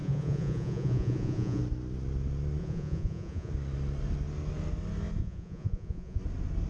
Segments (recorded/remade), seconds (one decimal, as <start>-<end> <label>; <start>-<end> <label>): 0.0-1.6 remade; 1.6-2.6 recorded; 2.6-3.5 remade; 3.5-5.2 recorded; 5.2-6.2 remade; 6.2-6.7 recorded